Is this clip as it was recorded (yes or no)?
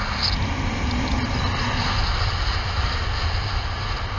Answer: yes